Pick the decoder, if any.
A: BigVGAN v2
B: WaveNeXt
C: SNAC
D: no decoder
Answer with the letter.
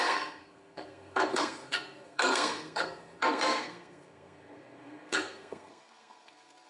C